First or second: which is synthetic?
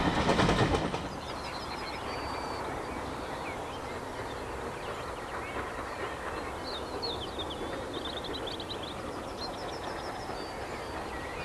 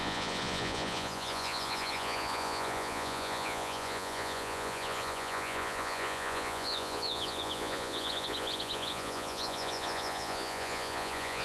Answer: second